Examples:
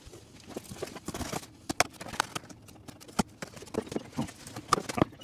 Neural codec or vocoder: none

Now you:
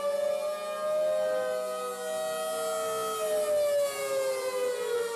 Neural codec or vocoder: none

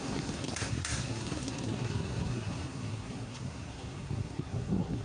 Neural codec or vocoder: codec, SNAC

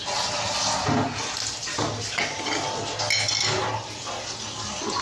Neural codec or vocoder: none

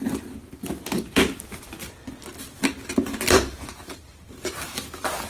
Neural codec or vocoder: none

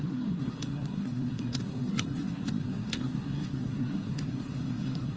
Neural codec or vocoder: codec, SNAC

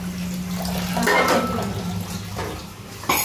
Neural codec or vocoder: none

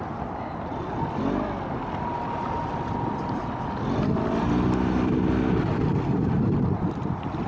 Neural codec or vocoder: none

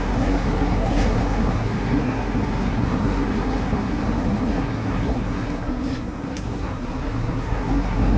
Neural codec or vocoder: codec, SNAC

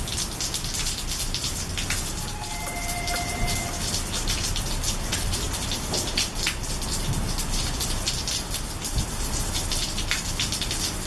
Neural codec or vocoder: none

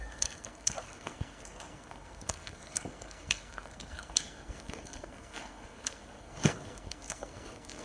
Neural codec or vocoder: codec, SNAC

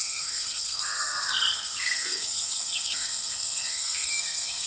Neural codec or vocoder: codec, SNAC